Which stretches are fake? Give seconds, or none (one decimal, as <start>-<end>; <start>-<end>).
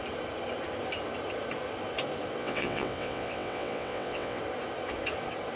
2.4-4.4